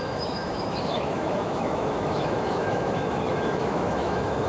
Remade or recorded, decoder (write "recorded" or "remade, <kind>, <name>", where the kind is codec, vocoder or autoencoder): remade, autoencoder, DAC-VAE